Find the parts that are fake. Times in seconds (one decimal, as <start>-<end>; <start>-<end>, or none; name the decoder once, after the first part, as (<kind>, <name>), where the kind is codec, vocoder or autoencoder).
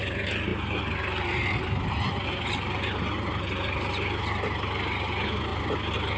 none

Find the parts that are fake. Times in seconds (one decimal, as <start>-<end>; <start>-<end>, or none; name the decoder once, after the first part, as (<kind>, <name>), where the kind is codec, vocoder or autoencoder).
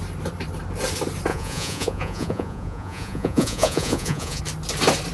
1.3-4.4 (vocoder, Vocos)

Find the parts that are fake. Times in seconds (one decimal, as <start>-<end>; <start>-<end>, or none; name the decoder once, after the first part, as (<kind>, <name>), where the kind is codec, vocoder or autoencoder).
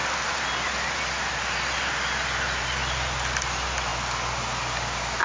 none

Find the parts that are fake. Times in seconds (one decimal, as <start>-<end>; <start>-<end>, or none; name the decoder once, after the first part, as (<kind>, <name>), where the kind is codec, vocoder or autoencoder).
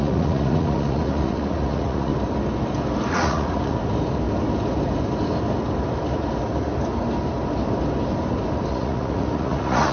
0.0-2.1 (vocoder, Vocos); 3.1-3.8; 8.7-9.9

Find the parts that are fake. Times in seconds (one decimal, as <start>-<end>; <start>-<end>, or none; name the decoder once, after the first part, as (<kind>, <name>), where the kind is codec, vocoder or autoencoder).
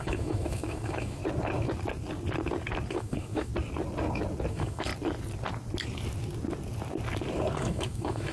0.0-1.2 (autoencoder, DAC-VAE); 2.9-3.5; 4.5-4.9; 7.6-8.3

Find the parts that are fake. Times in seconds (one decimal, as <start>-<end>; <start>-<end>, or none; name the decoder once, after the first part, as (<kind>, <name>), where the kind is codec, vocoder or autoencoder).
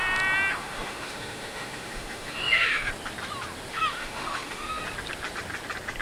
0.5-2.9 (autoencoder, DAC-VAE); 3.7-4.8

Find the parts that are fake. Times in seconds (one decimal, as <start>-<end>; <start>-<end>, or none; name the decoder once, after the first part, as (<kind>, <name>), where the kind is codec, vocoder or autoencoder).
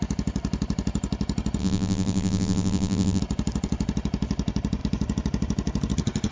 1.6-3.2 (vocoder, BigVGAN v2)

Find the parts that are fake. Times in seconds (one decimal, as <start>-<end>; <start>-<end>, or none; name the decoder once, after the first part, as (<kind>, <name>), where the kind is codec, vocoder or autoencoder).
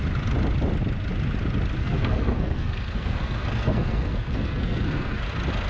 1.8-5.2 (codec, SNAC)